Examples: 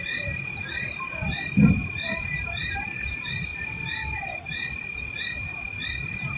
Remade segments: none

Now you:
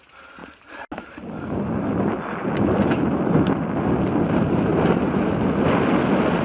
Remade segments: 4.7-5.3 (vocoder, BigVGAN v2)